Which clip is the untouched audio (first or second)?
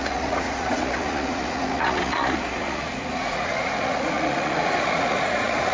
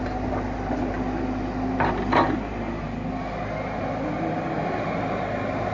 second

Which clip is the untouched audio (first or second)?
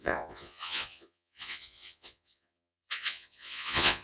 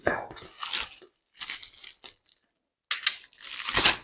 second